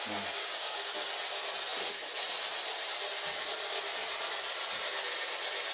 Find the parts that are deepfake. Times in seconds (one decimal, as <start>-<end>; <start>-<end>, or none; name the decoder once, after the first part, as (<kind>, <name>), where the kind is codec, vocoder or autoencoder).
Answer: 0.4-0.9 (codec, DAC)